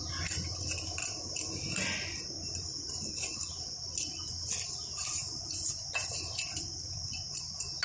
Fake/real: real